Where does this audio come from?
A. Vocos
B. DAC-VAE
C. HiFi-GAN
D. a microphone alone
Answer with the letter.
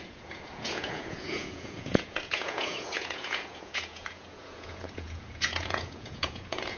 A